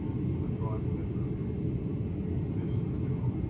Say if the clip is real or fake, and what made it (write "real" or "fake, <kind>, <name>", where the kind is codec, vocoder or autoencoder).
real